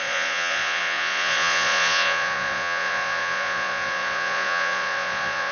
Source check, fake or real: fake